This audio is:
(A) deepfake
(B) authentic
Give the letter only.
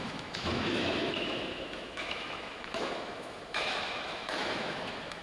A